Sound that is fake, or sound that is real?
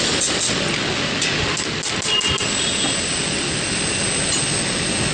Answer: real